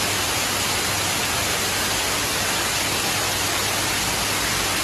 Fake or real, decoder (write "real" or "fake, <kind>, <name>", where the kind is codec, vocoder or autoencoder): real